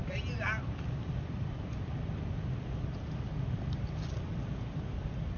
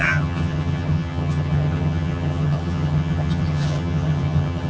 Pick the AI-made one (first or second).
second